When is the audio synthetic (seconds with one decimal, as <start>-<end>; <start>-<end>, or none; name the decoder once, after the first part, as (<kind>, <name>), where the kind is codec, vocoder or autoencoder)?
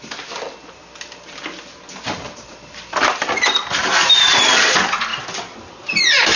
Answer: none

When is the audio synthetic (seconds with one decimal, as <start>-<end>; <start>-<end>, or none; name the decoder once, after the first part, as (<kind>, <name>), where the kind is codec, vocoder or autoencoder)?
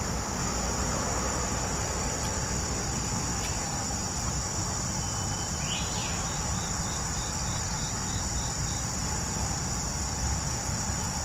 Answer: 0.4-4.9 (vocoder, BigVGAN v2); 6.0-11.2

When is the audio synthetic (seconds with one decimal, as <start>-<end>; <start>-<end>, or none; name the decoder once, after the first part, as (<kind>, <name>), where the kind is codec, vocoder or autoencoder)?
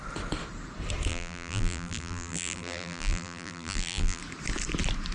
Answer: 1.1-4.2 (vocoder, BigVGAN v2)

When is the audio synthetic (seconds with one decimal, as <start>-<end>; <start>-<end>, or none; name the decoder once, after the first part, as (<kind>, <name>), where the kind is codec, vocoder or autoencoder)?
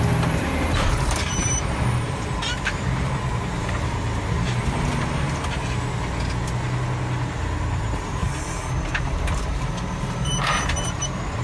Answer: 0.0-4.9 (vocoder, BigVGAN v2); 7.7-8.2; 9.1-11.4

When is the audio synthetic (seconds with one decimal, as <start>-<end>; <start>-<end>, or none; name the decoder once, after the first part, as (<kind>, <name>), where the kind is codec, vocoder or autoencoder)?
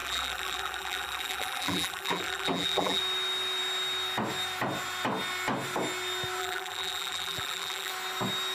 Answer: 0.0-3.0 (vocoder, BigVGAN v2); 6.4-7.9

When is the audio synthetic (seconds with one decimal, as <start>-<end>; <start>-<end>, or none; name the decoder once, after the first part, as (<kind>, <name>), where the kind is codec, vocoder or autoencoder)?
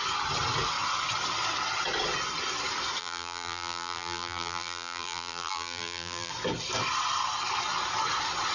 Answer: 3.0-6.3 (vocoder, BigVGAN v2)